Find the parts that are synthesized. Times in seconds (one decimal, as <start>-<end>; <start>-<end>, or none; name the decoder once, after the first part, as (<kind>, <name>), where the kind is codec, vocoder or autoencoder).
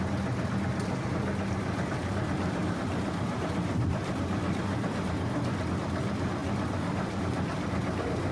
none